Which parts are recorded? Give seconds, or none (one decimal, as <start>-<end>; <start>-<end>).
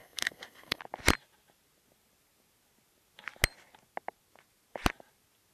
0.8-5.5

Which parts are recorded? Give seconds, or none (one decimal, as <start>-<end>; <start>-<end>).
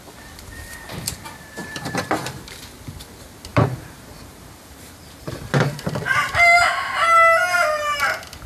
0.0-1.6; 2.6-3.5; 6.7-8.5